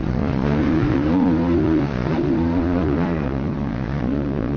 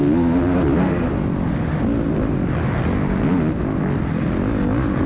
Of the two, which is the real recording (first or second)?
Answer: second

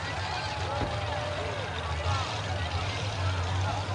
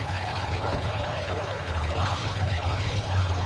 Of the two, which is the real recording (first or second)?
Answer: first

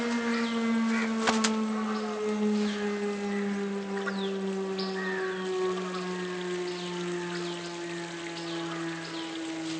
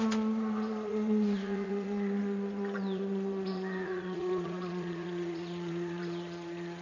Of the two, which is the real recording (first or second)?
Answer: first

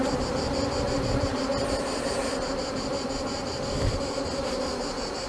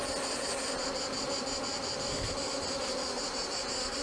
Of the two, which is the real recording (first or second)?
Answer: second